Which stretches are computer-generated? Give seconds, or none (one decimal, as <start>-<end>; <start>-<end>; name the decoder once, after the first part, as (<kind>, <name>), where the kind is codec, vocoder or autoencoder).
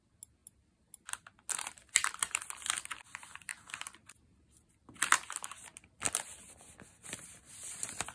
0.4-2.4 (vocoder, BigVGAN v2); 3.5-4.9; 5.4-8.1